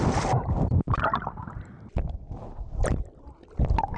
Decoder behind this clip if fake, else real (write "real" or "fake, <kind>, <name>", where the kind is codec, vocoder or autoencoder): real